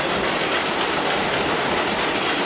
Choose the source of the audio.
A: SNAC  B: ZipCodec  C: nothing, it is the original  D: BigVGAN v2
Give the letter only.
C